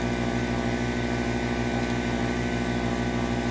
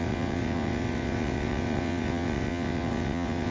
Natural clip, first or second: first